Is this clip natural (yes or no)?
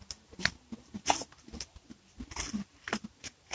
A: yes